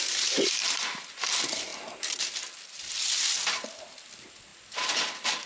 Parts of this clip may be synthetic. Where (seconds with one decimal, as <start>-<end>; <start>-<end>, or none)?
none